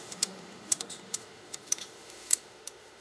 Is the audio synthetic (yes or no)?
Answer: yes